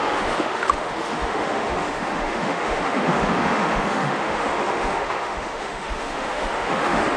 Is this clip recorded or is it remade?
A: remade